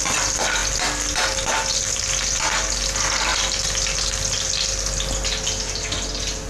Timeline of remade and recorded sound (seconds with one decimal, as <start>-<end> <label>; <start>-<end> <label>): 0.0-6.5 recorded